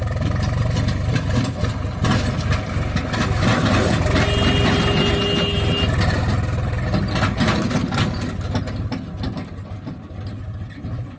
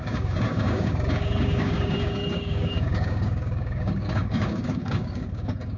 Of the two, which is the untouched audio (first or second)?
first